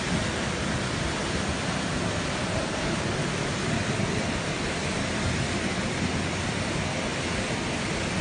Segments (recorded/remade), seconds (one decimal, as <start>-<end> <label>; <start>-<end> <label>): 0.0-8.2 recorded